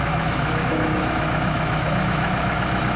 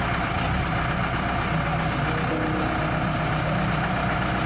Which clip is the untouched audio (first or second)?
second